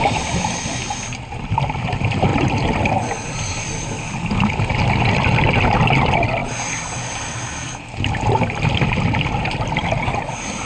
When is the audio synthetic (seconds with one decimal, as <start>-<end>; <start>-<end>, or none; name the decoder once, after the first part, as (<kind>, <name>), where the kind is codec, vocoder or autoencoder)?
none